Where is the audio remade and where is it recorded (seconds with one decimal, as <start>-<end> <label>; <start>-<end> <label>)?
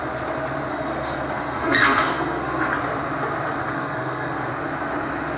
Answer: 0.0-0.7 recorded; 0.7-2.7 remade; 2.7-3.6 recorded; 3.6-4.5 remade; 4.5-5.4 recorded